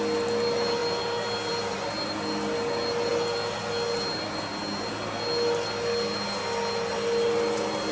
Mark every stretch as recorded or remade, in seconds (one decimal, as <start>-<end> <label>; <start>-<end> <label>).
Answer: 0.0-7.9 recorded